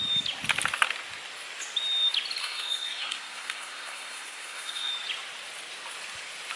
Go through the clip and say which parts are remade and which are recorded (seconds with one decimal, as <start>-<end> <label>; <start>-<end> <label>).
0.0-2.4 recorded; 2.4-4.9 remade; 4.9-6.6 recorded